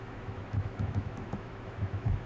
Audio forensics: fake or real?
fake